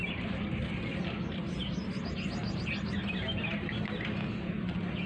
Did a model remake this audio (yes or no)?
no